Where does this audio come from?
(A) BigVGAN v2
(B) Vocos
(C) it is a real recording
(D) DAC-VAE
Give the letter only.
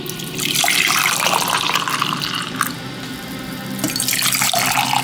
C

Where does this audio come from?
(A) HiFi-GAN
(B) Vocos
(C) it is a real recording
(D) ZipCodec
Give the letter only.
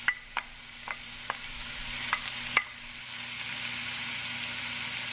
C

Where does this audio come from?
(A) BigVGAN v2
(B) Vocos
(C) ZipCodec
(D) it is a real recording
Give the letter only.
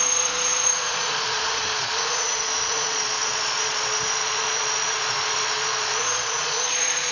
B